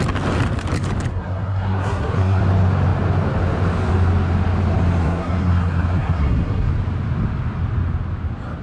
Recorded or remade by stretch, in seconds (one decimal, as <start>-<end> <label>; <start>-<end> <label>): 0.0-1.1 recorded; 1.1-2.4 remade; 2.4-5.0 recorded; 5.0-6.7 remade; 6.7-8.6 recorded